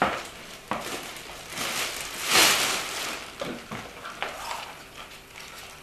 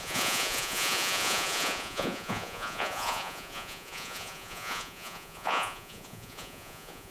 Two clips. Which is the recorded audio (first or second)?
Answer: first